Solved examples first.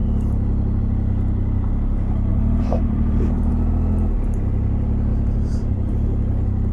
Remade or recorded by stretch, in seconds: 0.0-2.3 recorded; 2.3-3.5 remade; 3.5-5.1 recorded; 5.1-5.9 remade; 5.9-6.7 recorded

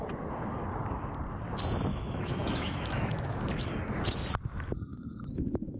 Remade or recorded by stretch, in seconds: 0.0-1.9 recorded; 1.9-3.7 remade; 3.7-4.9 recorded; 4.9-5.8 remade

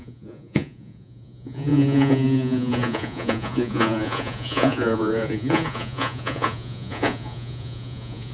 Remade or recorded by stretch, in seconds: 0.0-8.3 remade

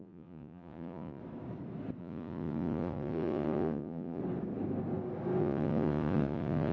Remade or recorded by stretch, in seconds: 0.0-1.2 remade; 1.2-2.0 recorded; 2.0-4.2 remade; 4.2-5.4 recorded; 5.4-6.7 remade

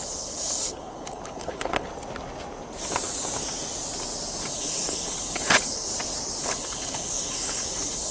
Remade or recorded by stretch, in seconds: 0.0-1.9 remade; 1.9-4.4 recorded; 4.4-5.9 remade; 5.9-6.4 recorded; 6.4-8.1 remade

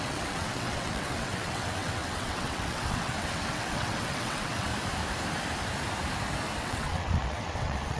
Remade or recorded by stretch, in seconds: 0.0-4.7 remade; 4.7-6.6 recorded; 6.6-8.0 remade

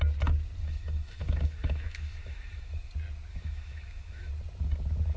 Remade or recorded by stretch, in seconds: 0.0-0.6 recorded; 0.6-2.9 remade; 2.9-3.3 recorded; 3.3-4.3 remade; 4.3-5.2 recorded